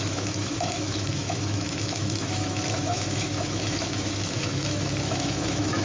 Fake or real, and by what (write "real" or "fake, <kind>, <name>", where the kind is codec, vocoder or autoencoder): fake, autoencoder, DAC-VAE